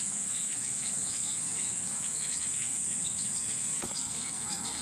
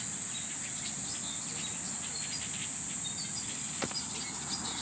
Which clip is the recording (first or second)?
second